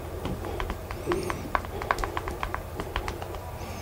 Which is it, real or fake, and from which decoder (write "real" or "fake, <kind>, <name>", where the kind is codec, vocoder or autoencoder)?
real